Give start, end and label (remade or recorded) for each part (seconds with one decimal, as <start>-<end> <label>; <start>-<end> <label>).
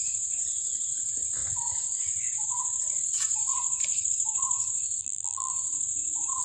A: 0.0-5.0 recorded; 5.0-5.5 remade; 5.5-6.4 recorded